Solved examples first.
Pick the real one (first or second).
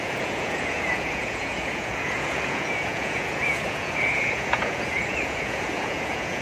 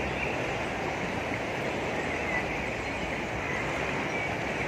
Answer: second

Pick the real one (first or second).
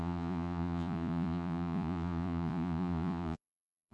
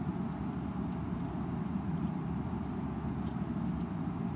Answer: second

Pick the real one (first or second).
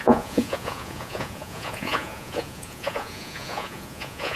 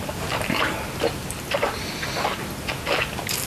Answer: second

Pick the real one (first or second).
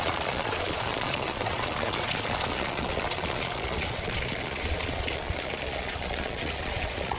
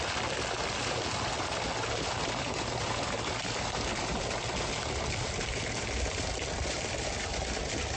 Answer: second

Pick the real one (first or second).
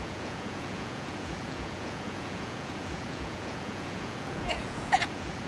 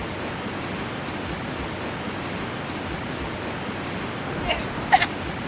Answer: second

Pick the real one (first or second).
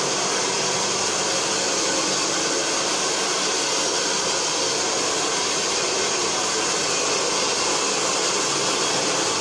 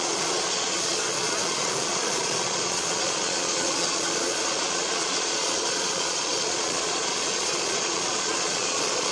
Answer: first